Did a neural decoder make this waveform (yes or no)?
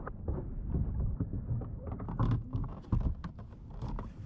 no